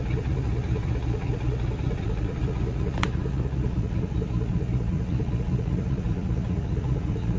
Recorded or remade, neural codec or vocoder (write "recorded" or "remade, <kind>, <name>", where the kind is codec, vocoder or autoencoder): remade, vocoder, Vocos